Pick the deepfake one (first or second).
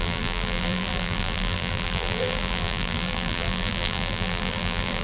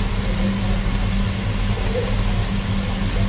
first